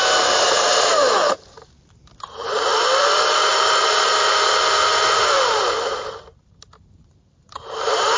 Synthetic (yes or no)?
yes